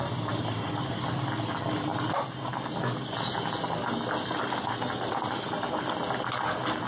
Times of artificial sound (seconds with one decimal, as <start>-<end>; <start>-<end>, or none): none